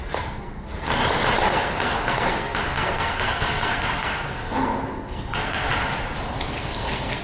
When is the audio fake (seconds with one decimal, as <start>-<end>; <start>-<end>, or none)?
0.0-1.0; 1.5-5.7; 6.4-7.2